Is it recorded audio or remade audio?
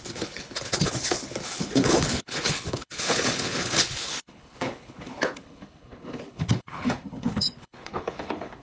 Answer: remade